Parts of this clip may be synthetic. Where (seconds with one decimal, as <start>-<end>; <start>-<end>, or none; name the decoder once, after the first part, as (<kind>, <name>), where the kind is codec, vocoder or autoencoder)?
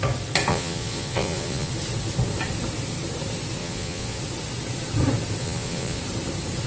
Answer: 0.5-1.7 (vocoder, Vocos); 3.6-4.2; 5.4-6.0